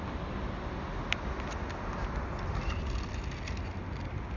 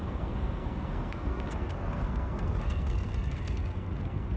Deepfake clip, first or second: second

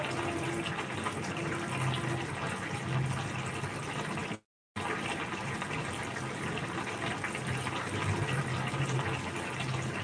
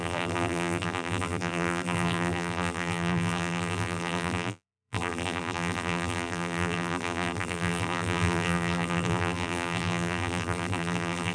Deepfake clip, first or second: second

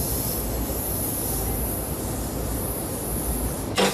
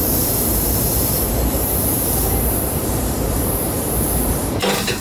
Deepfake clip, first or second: second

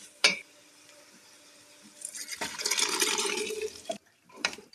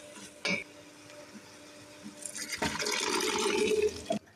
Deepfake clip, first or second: first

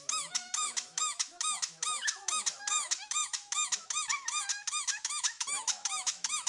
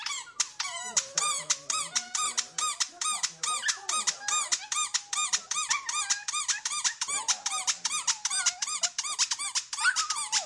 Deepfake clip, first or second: first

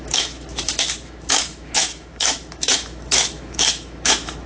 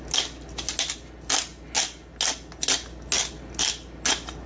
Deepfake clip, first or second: first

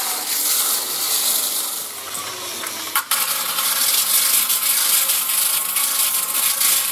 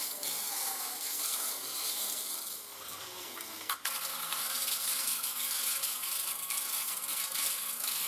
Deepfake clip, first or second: second